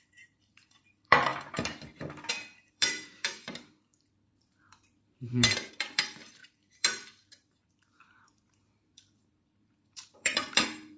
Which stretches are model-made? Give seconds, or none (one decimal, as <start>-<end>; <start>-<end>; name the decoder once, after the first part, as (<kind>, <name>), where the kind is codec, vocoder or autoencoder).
0.0-11.0 (vocoder, BigVGAN v2)